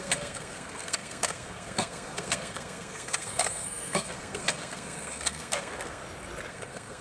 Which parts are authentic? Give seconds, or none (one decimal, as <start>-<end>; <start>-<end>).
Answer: 6.0-6.5